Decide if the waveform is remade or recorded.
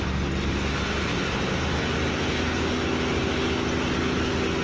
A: recorded